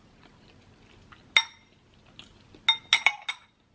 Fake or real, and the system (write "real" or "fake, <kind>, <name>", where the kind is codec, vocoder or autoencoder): real